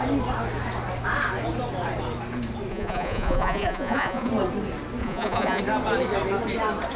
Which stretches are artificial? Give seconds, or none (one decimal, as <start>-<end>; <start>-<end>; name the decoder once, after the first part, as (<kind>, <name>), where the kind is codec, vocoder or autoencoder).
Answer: 2.7-4.3 (vocoder, Vocos); 5.0-5.6

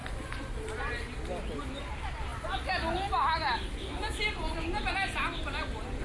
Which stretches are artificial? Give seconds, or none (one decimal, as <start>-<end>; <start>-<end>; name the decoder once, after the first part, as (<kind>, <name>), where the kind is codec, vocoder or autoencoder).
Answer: none

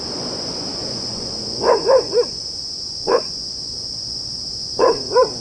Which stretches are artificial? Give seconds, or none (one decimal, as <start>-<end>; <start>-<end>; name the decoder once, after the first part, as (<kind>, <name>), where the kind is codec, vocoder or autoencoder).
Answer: 0.0-5.4 (vocoder, Vocos)